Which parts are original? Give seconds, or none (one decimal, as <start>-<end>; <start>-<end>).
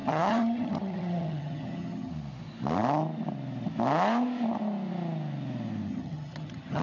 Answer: 2.1-5.9